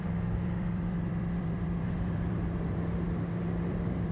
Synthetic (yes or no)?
yes